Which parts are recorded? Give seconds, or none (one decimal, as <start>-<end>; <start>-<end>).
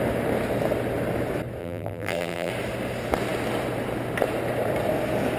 0.0-1.6; 2.5-5.4